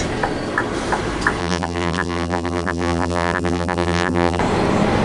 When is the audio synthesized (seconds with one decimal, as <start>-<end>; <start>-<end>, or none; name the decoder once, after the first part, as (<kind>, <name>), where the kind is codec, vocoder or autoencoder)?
1.4-4.4 (vocoder, BigVGAN v2)